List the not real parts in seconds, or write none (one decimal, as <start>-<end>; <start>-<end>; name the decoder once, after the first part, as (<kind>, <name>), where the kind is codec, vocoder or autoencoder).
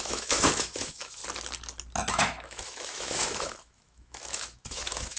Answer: 0.0-1.2 (autoencoder, DAC-VAE); 2.1-5.2